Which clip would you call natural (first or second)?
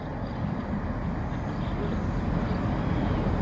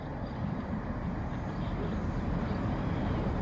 first